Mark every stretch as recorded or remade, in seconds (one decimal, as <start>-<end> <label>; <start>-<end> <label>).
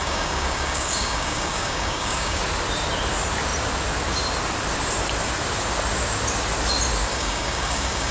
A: 0.0-2.4 remade; 2.4-7.1 recorded; 7.1-8.1 remade